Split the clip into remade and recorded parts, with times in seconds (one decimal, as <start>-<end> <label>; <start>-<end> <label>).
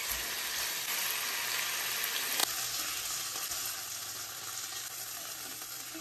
0.0-6.0 recorded